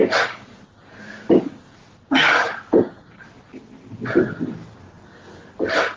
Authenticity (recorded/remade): recorded